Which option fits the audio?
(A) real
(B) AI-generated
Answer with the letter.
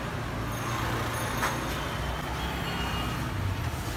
A